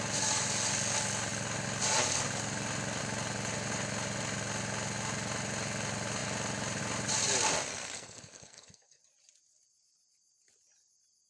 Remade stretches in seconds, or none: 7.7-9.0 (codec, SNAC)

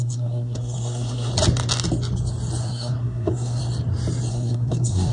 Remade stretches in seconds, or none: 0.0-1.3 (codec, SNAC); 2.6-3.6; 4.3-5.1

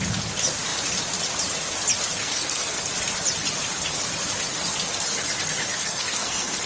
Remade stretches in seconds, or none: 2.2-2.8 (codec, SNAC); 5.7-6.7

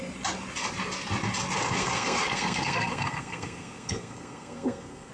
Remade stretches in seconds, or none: 1.8-5.1 (codec, SNAC)